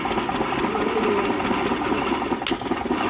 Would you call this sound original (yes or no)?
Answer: yes